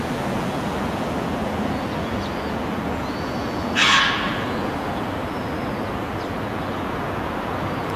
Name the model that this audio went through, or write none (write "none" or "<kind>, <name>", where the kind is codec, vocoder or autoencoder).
vocoder, BigVGAN v2